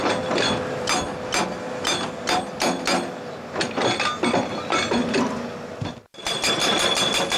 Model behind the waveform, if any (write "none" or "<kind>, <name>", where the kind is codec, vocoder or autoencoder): none